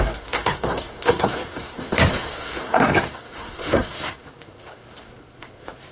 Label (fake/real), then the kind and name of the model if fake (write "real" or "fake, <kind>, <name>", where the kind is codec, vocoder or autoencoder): fake, codec, SNAC